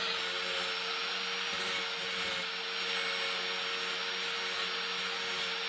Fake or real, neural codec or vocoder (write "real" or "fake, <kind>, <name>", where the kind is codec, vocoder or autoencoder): real